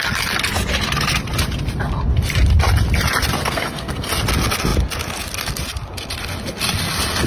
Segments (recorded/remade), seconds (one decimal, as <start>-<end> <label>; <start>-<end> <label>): 0.0-3.4 recorded; 3.4-4.1 remade; 4.1-7.3 recorded